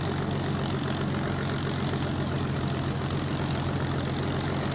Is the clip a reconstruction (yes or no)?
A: no